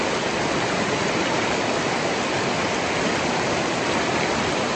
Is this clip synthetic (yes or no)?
no